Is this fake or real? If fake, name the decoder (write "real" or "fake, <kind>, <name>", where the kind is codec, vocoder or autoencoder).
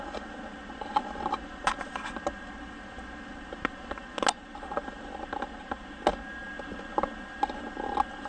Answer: real